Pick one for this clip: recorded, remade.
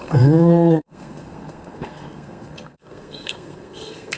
remade